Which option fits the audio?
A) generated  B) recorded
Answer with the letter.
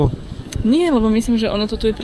A